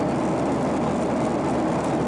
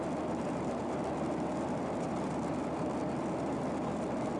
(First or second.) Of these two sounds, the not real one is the second